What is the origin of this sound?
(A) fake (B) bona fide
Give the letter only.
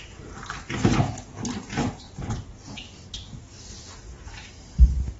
B